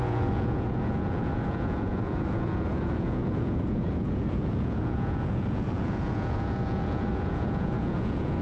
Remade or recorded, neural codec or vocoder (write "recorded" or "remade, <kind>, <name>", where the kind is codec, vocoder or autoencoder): remade, vocoder, Vocos